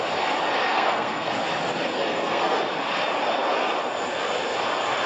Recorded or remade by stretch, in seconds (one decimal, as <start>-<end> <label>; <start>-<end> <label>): 0.0-0.7 recorded; 0.7-1.3 remade; 1.3-1.9 recorded; 1.9-2.6 remade; 2.6-5.1 recorded